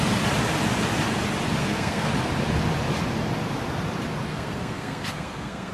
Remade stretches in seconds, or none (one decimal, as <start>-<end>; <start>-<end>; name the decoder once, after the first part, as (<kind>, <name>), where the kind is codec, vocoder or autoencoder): 1.6-2.1 (codec, SNAC); 4.3-5.7